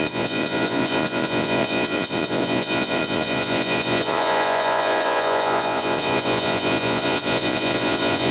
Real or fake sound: fake